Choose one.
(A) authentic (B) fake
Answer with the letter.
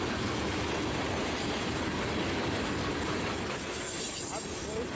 A